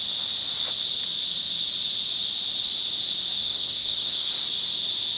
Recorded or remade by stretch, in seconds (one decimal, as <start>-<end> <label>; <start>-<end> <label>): 0.0-3.3 recorded; 3.3-4.3 remade; 4.3-5.2 recorded